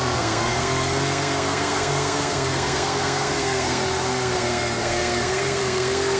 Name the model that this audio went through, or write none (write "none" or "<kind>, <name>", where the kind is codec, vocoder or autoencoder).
codec, SNAC